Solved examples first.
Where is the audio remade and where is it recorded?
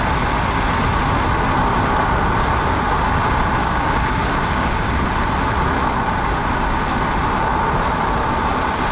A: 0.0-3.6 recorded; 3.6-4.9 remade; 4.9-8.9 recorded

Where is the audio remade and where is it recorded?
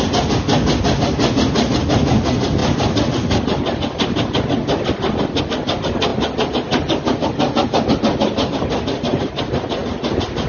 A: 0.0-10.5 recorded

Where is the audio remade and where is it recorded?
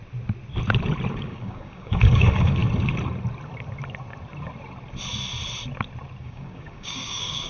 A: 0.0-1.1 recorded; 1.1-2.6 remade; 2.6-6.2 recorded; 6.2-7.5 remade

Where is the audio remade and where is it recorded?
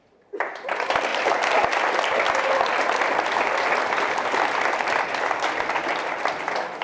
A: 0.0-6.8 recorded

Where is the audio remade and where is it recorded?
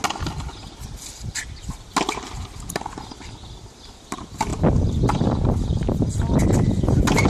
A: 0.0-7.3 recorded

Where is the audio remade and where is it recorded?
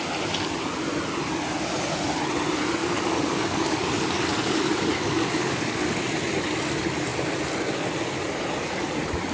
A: 0.0-2.8 recorded; 2.8-6.1 remade; 6.1-9.3 recorded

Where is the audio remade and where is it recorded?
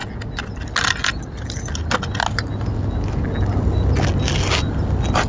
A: 0.0-5.3 recorded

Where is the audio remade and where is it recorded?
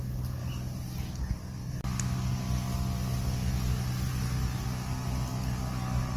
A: 0.0-6.2 recorded